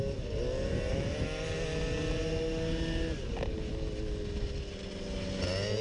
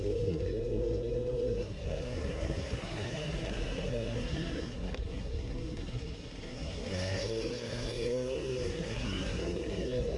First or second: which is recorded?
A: first